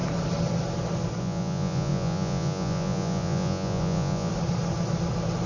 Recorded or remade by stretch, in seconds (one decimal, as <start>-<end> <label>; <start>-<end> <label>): 0.0-1.2 recorded; 1.2-4.3 remade; 4.3-5.5 recorded